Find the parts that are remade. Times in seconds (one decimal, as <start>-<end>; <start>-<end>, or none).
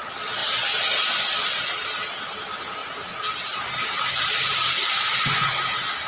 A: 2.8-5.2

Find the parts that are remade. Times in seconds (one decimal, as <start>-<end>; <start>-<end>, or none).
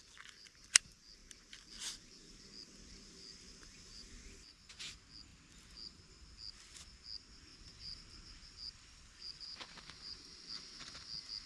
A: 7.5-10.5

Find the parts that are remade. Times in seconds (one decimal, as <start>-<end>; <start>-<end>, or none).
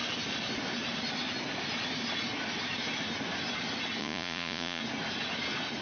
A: 4.0-4.8